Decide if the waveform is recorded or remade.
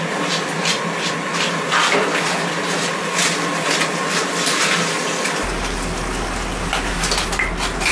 recorded